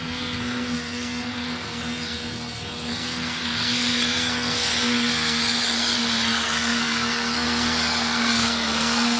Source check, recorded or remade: remade